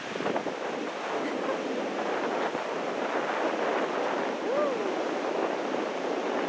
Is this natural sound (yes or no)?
yes